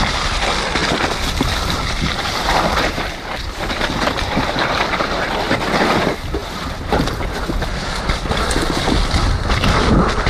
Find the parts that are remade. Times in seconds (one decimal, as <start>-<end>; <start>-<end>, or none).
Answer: 0.8-5.9; 6.4-6.9